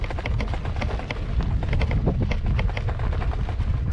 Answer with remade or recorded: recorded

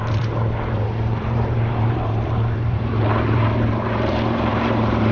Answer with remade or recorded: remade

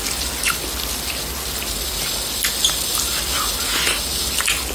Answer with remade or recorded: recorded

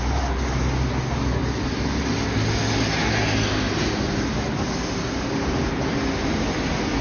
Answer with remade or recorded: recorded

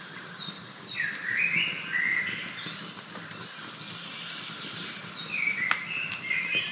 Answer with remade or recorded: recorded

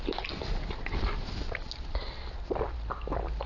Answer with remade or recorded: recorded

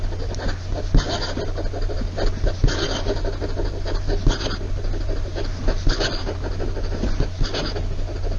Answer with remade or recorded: recorded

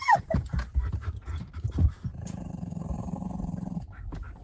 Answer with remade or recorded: remade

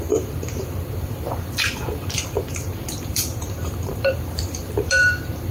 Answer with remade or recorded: remade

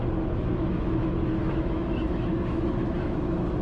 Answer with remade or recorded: remade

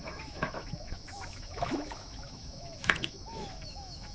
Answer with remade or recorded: remade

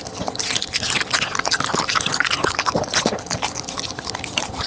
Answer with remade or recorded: recorded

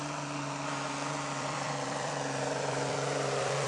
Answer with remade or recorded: remade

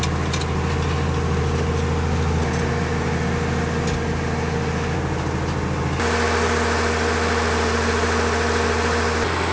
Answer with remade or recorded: recorded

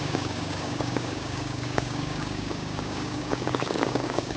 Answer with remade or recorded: remade